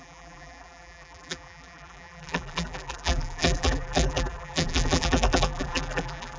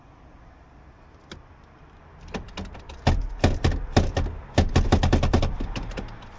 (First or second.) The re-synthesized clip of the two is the first